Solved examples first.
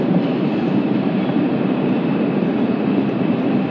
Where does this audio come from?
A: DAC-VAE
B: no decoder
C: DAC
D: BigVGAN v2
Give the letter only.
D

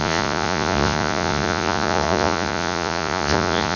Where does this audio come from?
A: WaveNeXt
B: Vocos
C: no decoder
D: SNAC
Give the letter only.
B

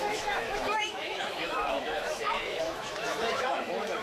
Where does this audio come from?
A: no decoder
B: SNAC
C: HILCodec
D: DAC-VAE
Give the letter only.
D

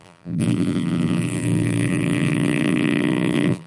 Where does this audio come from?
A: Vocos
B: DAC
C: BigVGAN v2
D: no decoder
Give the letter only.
C